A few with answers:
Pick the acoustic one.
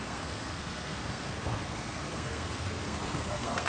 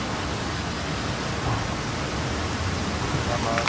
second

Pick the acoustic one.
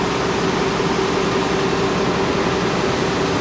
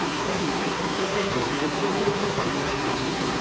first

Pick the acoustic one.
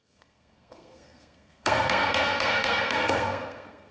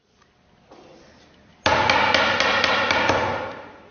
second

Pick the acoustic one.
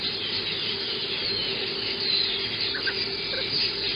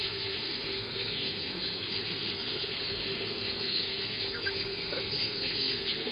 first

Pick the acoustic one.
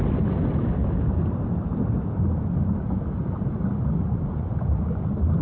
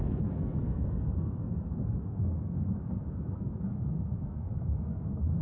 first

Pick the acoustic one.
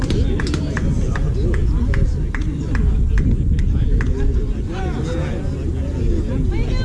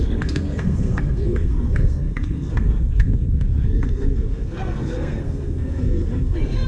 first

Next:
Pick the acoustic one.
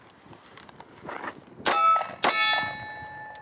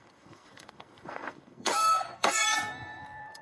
first